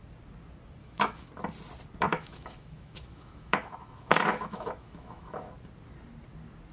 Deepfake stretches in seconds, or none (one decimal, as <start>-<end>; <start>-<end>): 0.8-1.3; 2.1-5.5